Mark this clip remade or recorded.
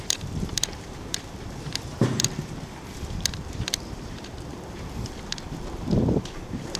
remade